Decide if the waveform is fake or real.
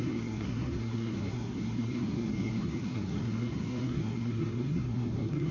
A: fake